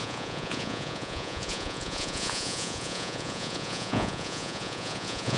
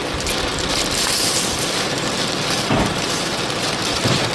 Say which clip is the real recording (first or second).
second